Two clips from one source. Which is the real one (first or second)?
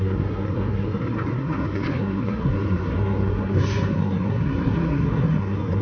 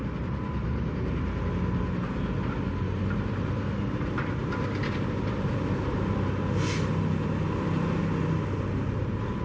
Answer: second